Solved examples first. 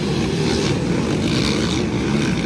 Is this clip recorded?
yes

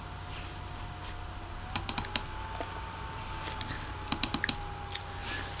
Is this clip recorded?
yes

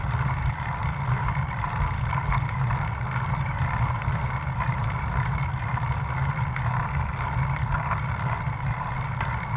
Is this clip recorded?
yes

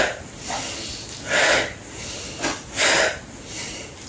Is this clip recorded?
yes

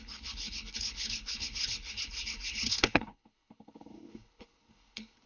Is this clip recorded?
no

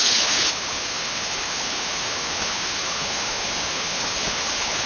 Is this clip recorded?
no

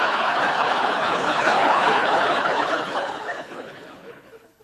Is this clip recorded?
no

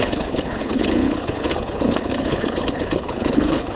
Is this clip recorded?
no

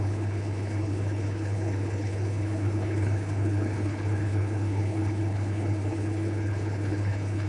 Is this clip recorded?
no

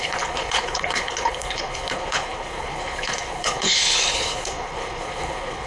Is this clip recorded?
no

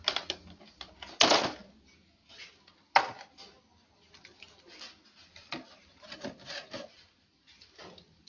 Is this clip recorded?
yes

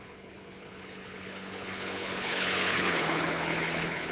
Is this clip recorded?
no